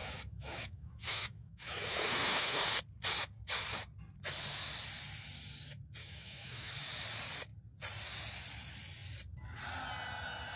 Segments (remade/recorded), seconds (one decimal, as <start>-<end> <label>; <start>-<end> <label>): 0.0-2.6 remade; 2.6-6.0 recorded; 6.0-6.7 remade; 6.7-10.6 recorded